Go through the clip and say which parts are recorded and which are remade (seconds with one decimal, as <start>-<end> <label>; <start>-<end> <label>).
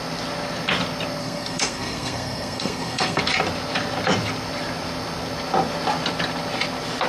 0.0-1.2 recorded; 1.2-3.2 remade; 3.2-7.1 recorded